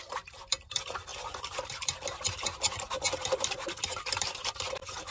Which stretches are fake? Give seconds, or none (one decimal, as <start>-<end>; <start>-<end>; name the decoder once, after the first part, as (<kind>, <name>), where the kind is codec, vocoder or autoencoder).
none